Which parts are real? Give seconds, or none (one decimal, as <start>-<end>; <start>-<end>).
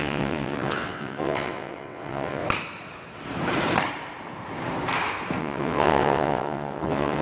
2.4-5.4